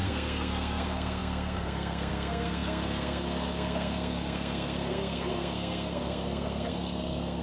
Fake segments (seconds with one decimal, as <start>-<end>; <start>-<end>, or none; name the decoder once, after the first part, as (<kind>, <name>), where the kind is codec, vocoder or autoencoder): 0.0-7.4 (codec, SNAC)